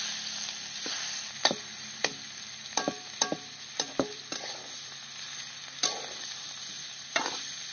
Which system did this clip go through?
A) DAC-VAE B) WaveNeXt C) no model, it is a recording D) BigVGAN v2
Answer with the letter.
C